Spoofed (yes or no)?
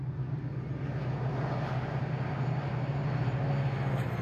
no